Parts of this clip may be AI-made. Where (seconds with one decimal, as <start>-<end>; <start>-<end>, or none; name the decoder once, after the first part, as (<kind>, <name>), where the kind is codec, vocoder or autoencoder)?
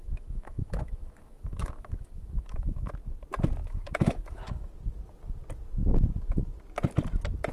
0.0-2.9 (autoencoder, DAC-VAE); 3.6-4.7